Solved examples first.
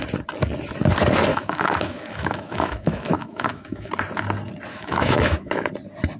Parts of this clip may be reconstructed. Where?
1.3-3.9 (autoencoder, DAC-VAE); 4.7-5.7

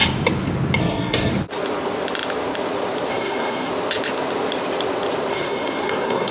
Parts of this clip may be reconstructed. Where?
0.8-1.3 (codec, SNAC); 3.1-3.7; 5.3-6.3